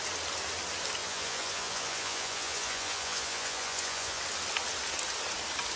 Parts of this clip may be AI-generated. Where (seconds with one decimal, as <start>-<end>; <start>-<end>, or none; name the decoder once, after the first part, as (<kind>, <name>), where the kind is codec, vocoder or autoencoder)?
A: 1.0-4.2 (vocoder, Vocos)